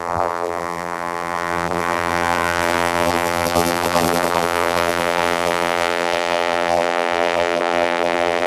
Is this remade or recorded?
remade